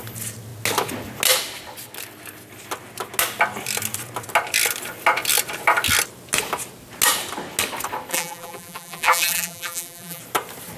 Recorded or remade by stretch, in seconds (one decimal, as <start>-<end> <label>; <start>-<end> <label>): 0.0-8.1 recorded; 8.1-10.2 remade; 10.2-10.8 recorded